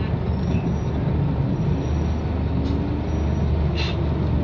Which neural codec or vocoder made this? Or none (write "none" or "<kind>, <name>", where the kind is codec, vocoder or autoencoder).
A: none